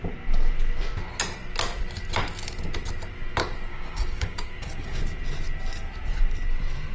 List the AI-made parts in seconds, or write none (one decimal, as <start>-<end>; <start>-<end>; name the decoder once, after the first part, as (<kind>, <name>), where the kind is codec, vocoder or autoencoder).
3.7-5.0 (codec, DAC)

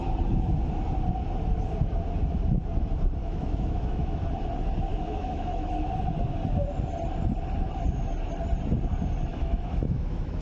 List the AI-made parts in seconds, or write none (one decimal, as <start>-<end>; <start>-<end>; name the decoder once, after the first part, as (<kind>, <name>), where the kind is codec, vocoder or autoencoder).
3.2-4.2 (autoencoder, DAC-VAE); 4.9-5.9; 9.3-10.4